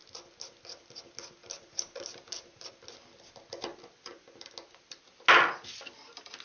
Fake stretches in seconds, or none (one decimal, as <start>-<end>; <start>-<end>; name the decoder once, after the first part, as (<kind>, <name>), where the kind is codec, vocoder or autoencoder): 1.4-2.7 (vocoder, BigVGAN v2)